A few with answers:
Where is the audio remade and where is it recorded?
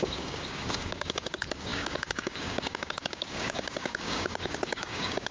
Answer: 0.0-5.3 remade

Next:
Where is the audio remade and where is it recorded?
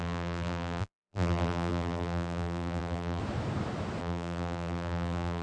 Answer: 0.0-3.2 remade; 3.2-4.0 recorded; 4.0-5.4 remade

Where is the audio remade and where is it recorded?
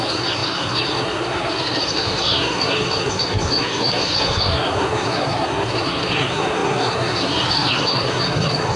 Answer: 0.0-8.8 remade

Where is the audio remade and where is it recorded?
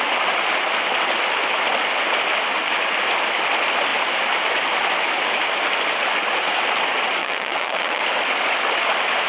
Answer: 0.0-7.2 recorded; 7.2-8.0 remade; 8.0-9.3 recorded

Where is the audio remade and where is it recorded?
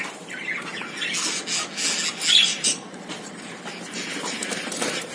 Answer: 0.0-0.7 remade; 0.7-2.3 recorded; 2.3-5.1 remade